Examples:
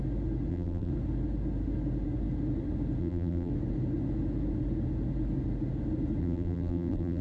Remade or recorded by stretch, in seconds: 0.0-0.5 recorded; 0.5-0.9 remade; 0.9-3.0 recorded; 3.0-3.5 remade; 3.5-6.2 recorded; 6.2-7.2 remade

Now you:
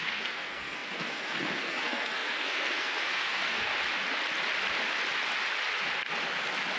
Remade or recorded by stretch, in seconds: 0.0-3.7 remade; 3.7-6.8 recorded